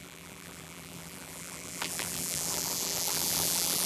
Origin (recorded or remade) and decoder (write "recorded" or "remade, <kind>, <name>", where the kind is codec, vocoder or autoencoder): remade, vocoder, BigVGAN v2